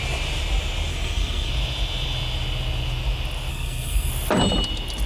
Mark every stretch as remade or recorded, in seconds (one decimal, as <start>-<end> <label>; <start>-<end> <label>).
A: 0.0-0.9 recorded; 0.9-1.5 remade; 1.5-3.5 recorded; 3.5-4.1 remade; 4.1-5.1 recorded